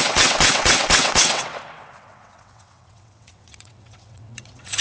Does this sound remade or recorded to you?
remade